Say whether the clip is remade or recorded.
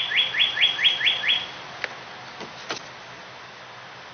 recorded